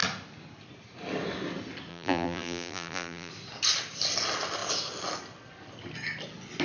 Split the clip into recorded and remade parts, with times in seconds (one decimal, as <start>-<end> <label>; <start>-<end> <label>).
0.0-1.9 recorded; 1.9-3.3 remade; 3.3-6.6 recorded